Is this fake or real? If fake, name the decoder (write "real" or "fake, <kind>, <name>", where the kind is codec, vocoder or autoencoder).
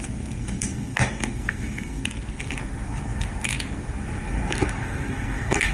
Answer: fake, codec, SNAC